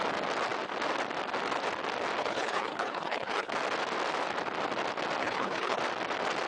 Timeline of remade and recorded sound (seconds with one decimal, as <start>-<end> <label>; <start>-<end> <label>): 0.0-2.2 recorded; 2.2-3.5 remade; 3.5-5.2 recorded; 5.2-5.8 remade; 5.8-6.5 recorded